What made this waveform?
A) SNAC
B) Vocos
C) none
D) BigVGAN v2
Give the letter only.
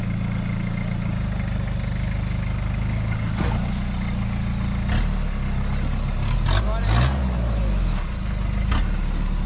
C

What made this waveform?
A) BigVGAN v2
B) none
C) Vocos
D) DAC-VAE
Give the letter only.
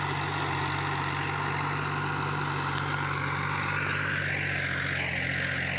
B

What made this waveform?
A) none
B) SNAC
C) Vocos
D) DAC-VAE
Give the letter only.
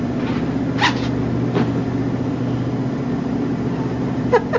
A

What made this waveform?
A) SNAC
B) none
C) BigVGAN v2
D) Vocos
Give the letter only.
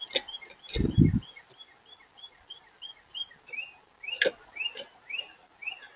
B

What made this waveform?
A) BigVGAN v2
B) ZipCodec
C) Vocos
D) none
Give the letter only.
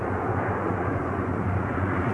C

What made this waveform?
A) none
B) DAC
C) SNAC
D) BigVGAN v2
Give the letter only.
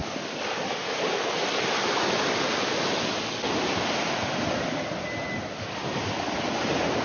A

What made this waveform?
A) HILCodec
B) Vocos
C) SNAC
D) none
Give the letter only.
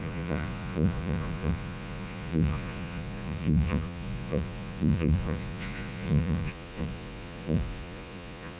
B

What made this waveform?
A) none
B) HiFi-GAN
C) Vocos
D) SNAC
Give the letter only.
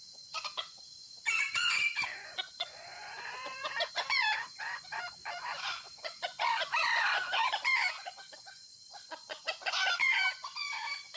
C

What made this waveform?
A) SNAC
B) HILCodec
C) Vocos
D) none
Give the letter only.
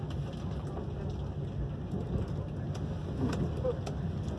D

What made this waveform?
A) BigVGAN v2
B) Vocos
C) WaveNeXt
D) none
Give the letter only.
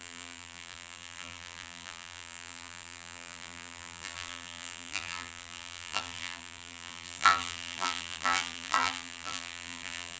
A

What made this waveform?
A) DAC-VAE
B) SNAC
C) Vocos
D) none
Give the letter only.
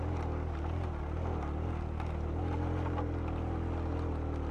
D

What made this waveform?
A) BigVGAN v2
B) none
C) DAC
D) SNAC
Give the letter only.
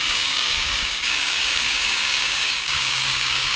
C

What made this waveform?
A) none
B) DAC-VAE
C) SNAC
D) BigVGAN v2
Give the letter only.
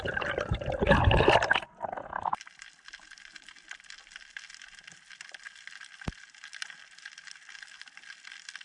A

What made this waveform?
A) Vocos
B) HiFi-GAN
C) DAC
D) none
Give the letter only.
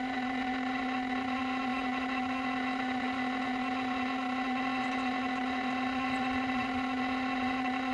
A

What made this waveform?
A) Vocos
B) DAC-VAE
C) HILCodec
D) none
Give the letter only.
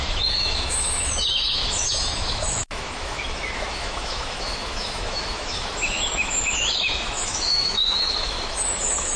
B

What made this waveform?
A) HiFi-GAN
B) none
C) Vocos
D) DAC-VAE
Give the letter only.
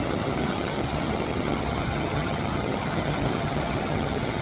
A